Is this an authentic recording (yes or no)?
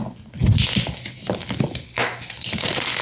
yes